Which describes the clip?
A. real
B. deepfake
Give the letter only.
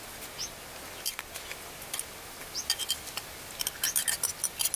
A